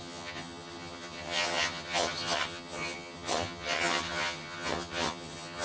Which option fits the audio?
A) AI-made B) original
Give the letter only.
A